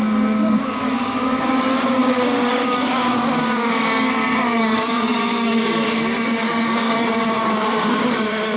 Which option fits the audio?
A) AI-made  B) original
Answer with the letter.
A